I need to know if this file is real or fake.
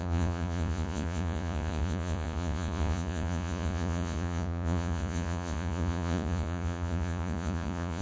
fake